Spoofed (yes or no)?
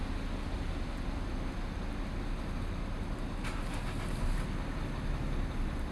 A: no